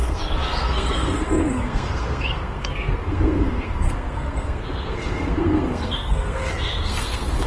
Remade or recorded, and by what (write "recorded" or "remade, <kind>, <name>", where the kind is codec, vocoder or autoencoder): remade, codec, SNAC